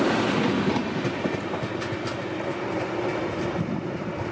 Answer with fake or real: real